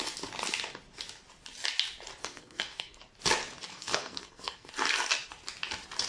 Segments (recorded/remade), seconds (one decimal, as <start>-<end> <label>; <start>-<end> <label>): 0.0-2.2 recorded; 2.2-3.0 remade; 3.0-3.7 recorded; 3.7-4.7 remade; 4.7-6.1 recorded